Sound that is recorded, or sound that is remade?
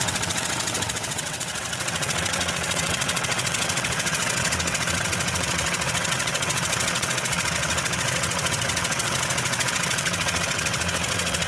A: remade